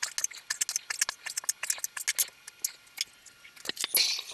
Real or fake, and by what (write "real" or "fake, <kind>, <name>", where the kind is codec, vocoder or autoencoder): real